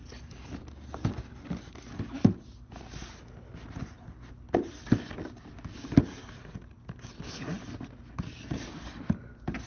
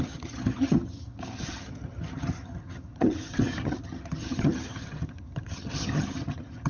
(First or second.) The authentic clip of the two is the first